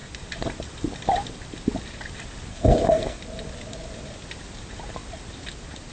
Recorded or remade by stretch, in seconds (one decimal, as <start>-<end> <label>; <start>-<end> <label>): 0.0-2.5 recorded; 2.5-3.2 remade; 3.2-5.9 recorded